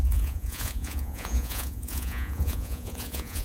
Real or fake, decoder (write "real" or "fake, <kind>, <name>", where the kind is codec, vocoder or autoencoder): fake, vocoder, Vocos